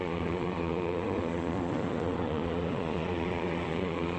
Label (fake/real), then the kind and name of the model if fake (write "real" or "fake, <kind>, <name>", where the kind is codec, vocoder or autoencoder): fake, vocoder, Vocos